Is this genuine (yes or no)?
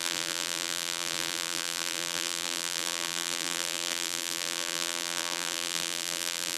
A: no